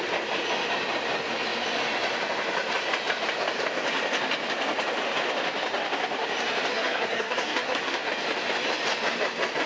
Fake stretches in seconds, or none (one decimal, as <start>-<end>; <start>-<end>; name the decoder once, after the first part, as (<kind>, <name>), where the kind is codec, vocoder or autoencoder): 6.7-8.1 (codec, SNAC)